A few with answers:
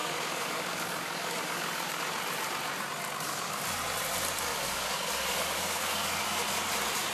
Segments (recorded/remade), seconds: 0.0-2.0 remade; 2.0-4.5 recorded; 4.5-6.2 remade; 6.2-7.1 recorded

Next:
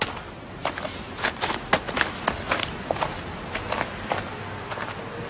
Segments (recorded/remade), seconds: 0.0-5.3 recorded

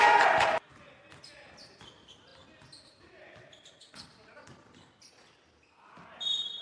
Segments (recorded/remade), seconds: 0.0-6.6 recorded

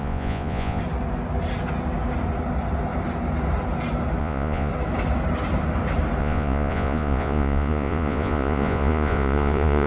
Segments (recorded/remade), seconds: 0.0-0.8 remade; 0.8-4.2 recorded; 4.2-4.7 remade; 4.7-6.2 recorded; 6.2-9.9 remade

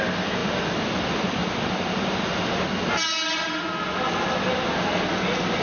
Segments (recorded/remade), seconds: 0.0-0.4 recorded; 0.4-3.8 remade; 3.8-5.6 recorded

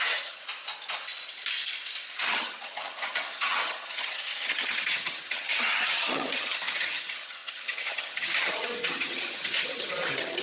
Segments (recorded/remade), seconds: 0.0-0.4 remade; 0.4-2.3 recorded; 2.3-10.4 remade

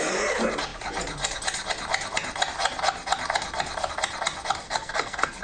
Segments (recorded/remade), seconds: 0.0-4.6 recorded; 4.6-5.4 remade

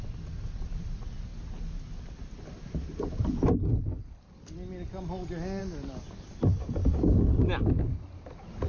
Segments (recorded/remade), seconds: 0.0-8.7 recorded